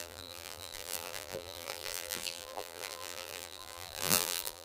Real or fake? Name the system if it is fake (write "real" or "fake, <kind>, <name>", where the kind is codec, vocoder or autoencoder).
fake, vocoder, BigVGAN v2